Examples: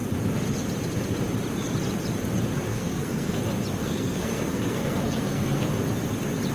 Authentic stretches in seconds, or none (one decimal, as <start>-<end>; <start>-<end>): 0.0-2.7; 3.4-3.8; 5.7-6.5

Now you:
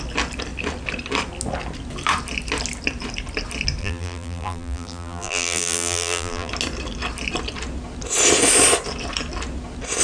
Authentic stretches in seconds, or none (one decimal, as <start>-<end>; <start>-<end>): 0.0-3.8; 6.5-10.0

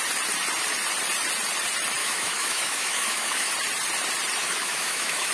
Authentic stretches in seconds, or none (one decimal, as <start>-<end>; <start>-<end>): 0.0-2.0; 3.5-4.4

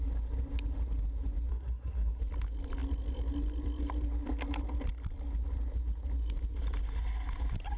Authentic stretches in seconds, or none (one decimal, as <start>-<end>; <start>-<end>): 0.0-1.5; 2.2-7.8